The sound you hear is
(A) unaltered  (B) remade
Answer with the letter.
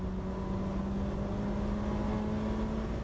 A